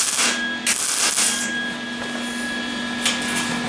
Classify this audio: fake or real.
real